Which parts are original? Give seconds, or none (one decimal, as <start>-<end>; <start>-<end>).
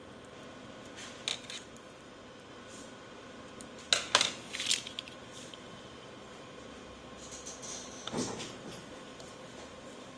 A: 0.0-10.2